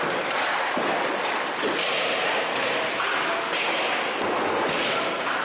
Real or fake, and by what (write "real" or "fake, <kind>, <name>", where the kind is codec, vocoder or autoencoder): real